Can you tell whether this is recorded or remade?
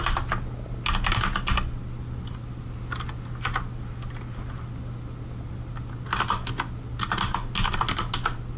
recorded